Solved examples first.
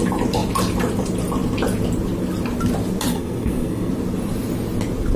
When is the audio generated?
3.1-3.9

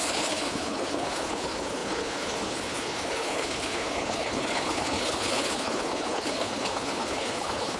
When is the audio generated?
0.0-7.8

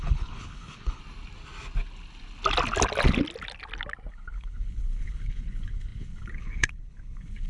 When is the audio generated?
0.0-1.0; 4.1-7.5

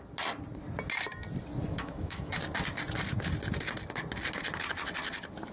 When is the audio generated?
1.7-2.3